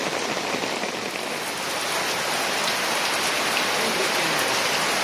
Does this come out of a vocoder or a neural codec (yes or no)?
no